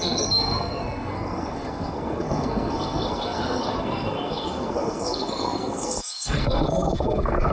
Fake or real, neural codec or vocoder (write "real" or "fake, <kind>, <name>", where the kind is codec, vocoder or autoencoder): fake, codec, SNAC